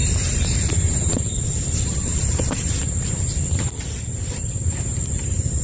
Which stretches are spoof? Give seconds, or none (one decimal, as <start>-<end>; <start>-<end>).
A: 0.0-5.6